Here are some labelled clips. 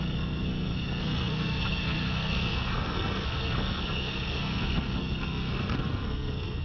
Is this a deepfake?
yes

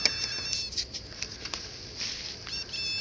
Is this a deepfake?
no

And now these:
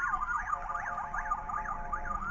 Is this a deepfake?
yes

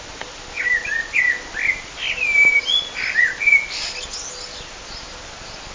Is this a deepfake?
no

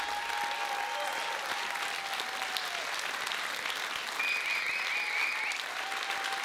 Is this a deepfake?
no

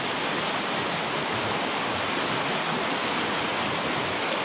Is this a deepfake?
no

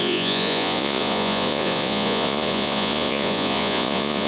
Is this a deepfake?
yes